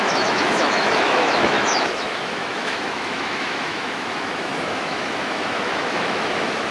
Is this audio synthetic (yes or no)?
yes